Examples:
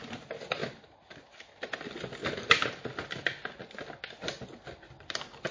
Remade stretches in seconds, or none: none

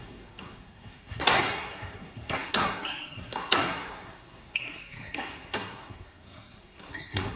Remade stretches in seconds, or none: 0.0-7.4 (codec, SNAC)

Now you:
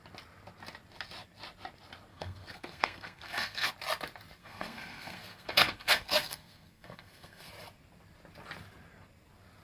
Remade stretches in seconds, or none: 2.1-3.7 (codec, SNAC); 4.4-7.5

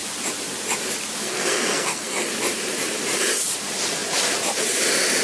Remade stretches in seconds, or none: 1.2-2.3 (codec, SNAC)